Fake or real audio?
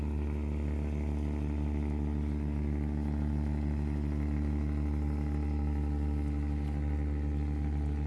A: real